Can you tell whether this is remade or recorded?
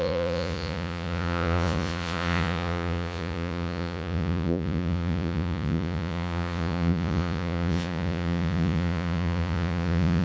remade